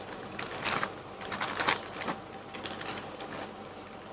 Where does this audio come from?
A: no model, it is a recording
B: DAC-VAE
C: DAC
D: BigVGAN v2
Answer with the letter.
A